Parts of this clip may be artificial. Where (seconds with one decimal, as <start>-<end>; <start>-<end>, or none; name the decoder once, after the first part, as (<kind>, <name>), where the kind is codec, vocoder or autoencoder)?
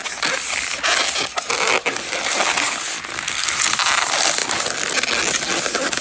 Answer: none